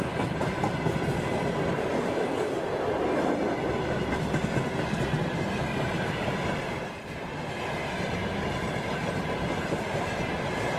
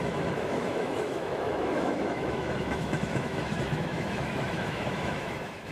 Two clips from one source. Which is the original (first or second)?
first